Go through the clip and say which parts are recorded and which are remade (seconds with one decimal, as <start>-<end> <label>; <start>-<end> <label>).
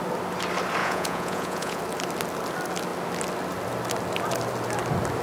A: 0.0-0.8 recorded; 0.8-1.8 remade; 1.8-5.2 recorded